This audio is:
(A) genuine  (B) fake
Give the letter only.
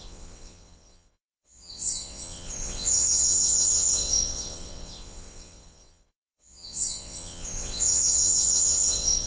B